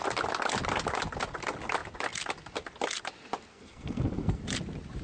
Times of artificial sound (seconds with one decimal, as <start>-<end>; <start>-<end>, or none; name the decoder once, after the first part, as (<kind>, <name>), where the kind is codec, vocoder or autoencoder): 3.5-4.4 (codec, SNAC)